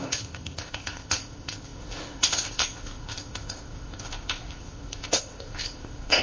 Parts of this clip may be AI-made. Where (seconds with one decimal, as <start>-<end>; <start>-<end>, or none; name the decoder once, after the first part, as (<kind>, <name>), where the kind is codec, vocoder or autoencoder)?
0.0-6.2 (codec, ZipCodec)